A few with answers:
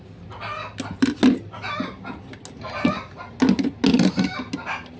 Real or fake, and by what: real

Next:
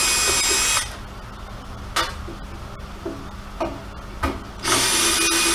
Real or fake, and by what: real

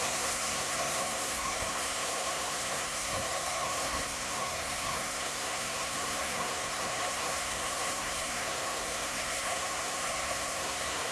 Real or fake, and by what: fake, codec, SNAC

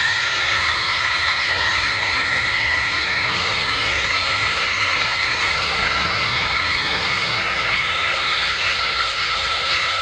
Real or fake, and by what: fake, codec, SNAC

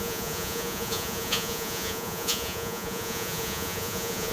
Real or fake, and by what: fake, vocoder, Vocos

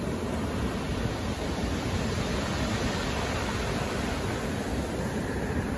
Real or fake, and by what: real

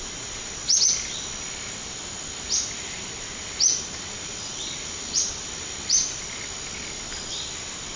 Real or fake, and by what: real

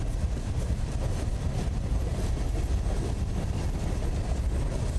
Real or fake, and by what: fake, vocoder, BigVGAN v2